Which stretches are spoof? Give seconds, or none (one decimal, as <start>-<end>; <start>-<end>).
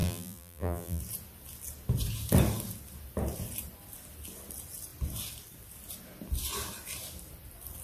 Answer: 0.0-1.0